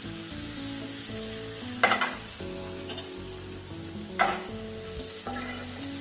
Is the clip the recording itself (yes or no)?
no